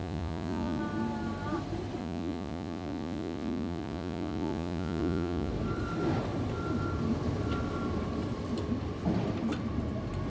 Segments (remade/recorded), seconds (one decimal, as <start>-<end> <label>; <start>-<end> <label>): 0.0-0.8 remade; 0.8-2.0 recorded; 2.0-5.5 remade; 5.5-10.3 recorded